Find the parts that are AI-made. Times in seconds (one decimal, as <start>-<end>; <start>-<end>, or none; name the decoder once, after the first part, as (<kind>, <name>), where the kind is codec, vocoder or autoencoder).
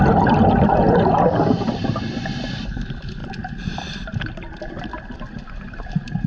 none